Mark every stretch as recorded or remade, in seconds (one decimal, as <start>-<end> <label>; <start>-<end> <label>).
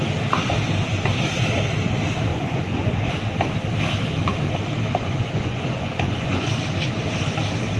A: 0.0-2.3 recorded; 2.3-3.1 remade; 3.1-5.0 recorded; 5.0-6.5 remade; 6.5-7.8 recorded